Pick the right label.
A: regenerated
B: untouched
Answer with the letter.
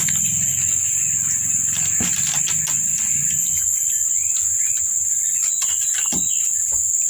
B